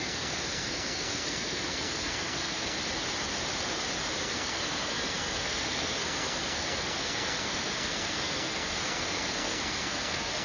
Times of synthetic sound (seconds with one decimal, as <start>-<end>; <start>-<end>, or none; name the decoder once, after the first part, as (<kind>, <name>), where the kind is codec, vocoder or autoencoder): 0.0-2.8 (codec, SNAC); 4.2-10.4